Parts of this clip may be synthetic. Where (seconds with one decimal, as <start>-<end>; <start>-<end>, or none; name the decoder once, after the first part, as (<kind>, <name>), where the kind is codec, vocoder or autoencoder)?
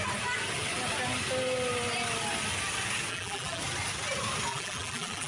3.1-3.6 (vocoder, BigVGAN v2); 4.5-5.3